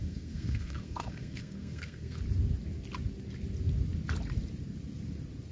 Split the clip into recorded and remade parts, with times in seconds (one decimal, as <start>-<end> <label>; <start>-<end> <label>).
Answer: 0.0-2.2 remade; 2.2-5.5 recorded